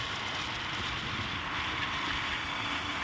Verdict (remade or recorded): recorded